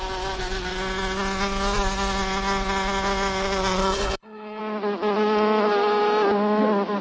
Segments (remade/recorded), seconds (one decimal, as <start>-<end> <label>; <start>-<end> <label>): 0.0-3.8 recorded; 3.8-4.6 remade; 4.6-7.0 recorded